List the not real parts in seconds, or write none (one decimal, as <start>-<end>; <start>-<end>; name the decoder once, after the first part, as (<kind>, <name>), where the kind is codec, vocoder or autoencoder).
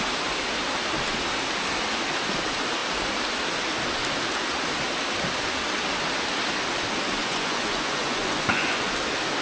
7.2-8.9 (vocoder, Vocos)